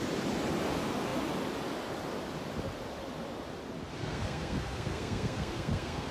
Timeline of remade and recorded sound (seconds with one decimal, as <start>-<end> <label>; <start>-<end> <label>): 0.0-4.0 recorded; 4.0-6.1 remade